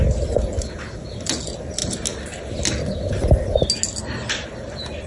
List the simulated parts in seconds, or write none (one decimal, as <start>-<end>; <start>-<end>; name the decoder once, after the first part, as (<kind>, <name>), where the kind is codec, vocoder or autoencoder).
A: none